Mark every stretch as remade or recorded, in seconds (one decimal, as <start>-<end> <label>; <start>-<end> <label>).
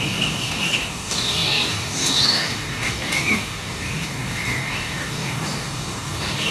0.0-6.5 remade